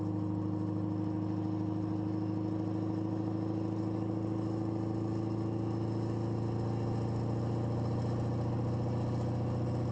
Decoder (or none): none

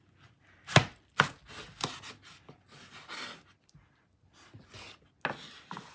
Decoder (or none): none